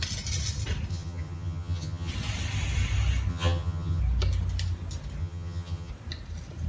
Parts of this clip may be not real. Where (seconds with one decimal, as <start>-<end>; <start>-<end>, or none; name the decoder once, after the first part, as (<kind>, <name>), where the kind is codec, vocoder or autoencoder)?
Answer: 0.9-2.1 (vocoder, HiFi-GAN); 3.3-4.0; 5.2-5.9